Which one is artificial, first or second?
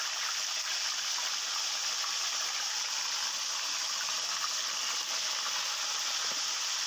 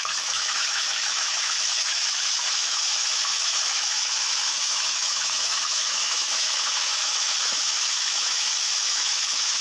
second